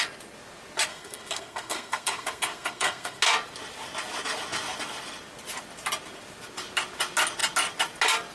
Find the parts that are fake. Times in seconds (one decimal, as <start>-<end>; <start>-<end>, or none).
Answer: 0.9-3.2